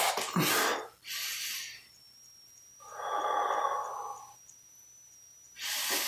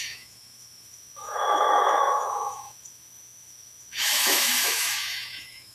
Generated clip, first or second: second